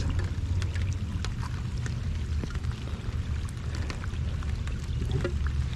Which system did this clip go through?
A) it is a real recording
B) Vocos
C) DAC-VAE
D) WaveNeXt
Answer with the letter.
A